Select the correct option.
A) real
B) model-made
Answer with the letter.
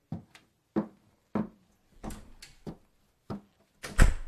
A